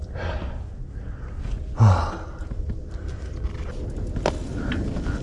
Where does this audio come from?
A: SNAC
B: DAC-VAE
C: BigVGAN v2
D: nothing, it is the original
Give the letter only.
D